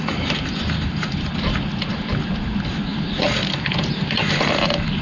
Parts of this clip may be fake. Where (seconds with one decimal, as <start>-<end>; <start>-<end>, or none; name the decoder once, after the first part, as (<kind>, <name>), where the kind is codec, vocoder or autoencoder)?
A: none